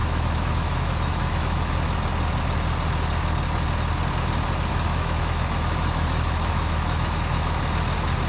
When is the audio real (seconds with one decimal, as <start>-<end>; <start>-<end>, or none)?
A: 1.7-4.7; 7.6-8.3